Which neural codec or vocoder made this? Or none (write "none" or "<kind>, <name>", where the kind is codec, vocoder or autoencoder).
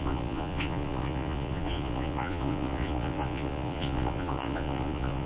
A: vocoder, Vocos